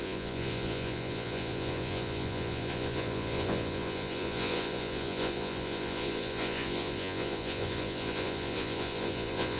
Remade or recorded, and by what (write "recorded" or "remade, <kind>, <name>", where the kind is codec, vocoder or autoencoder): remade, vocoder, Vocos